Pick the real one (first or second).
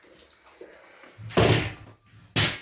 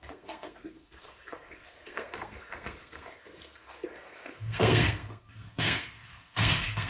first